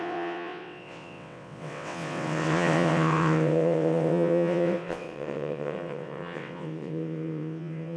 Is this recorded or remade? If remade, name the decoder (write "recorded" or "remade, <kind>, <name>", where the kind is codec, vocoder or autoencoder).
remade, vocoder, WaveNeXt